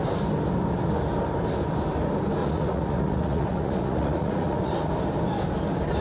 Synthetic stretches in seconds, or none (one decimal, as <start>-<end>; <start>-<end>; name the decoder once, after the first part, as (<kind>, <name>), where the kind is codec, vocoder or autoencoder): 2.4-4.7 (vocoder, Vocos)